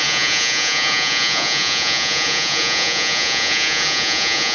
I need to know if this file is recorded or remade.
remade